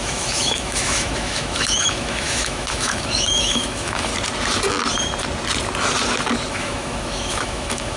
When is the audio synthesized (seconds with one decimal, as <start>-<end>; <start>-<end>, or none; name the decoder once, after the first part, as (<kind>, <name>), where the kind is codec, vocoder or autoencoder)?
0.0-4.1 (autoencoder, DAC-VAE); 6.5-8.0